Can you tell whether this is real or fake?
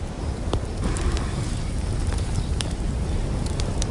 fake